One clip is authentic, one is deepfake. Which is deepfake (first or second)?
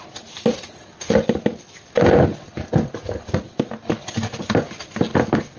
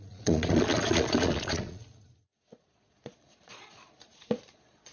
second